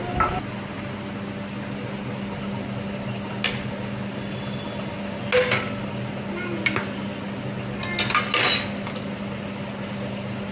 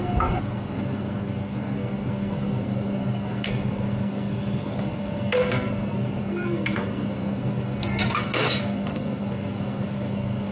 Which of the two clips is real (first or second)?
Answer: first